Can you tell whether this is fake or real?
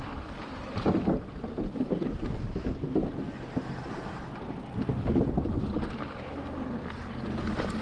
real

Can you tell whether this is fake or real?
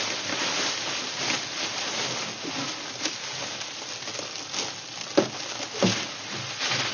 real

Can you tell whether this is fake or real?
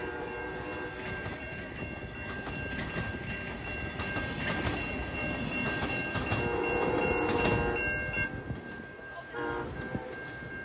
real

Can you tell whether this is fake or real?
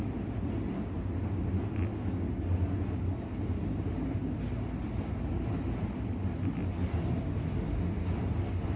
real